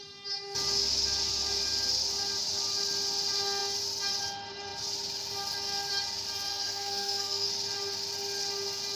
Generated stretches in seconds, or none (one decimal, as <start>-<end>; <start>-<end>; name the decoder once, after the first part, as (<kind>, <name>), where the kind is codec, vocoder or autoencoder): 6.5-7.5 (codec, SNAC)